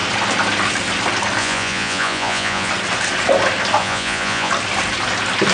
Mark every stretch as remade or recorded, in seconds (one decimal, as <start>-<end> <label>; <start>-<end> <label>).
0.0-1.4 recorded; 1.4-2.7 remade; 2.7-3.8 recorded; 3.8-4.5 remade; 4.5-5.5 recorded